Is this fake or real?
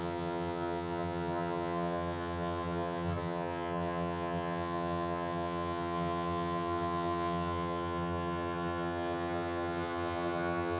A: fake